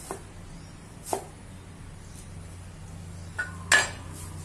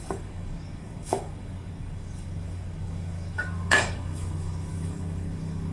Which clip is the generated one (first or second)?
second